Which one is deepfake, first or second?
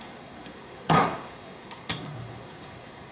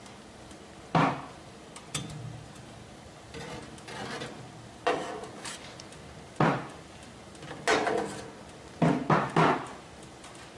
first